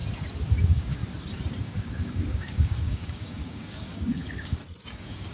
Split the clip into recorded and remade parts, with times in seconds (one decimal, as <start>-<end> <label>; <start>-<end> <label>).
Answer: 0.0-0.6 recorded; 0.6-1.0 remade; 1.0-1.6 recorded; 1.6-5.3 remade